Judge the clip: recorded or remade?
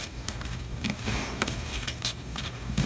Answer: remade